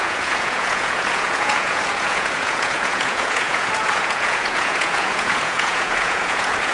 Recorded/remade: remade